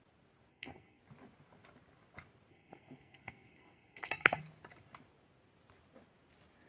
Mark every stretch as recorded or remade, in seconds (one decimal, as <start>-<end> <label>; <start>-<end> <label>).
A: 0.0-0.5 recorded; 0.5-1.0 remade; 1.0-2.5 recorded; 2.5-4.4 remade; 4.4-6.7 recorded